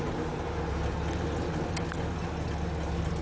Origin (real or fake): real